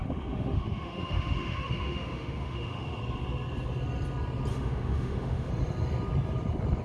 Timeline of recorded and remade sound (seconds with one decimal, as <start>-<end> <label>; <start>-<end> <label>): 0.0-3.0 remade; 3.0-4.5 recorded; 4.5-5.5 remade; 5.5-6.8 recorded